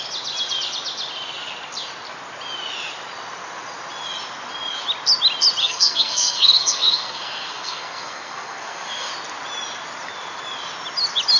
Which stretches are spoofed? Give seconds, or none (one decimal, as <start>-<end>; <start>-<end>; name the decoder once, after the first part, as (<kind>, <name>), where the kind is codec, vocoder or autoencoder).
5.6-9.1 (codec, SNAC)